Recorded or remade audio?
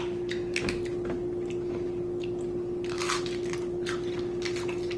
recorded